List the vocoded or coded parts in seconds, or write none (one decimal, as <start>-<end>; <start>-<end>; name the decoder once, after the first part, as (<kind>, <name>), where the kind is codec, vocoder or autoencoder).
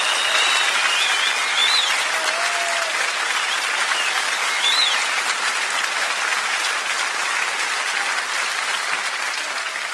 none